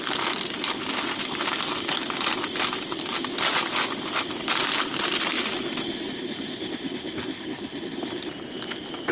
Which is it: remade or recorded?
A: recorded